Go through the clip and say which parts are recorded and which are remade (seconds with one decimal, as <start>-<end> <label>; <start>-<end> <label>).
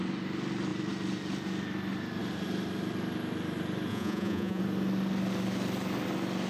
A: 0.0-3.9 recorded; 3.9-4.6 remade; 4.6-6.5 recorded